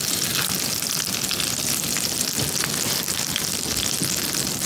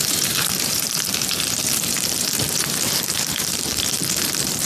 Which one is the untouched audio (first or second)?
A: first